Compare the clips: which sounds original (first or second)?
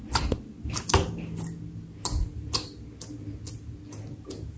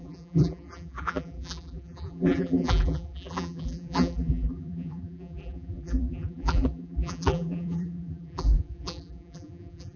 first